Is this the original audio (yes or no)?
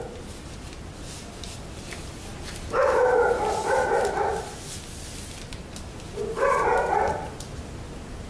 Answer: yes